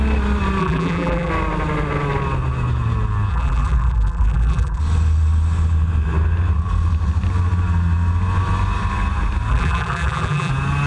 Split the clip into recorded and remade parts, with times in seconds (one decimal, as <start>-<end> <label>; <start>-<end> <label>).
0.0-0.6 recorded; 0.6-1.3 remade; 1.3-3.3 recorded; 3.3-4.8 remade; 4.8-9.5 recorded; 9.5-10.5 remade; 10.5-10.9 recorded